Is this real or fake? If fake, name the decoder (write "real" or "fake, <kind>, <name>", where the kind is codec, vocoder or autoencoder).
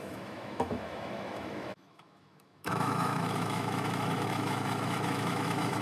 fake, autoencoder, DAC-VAE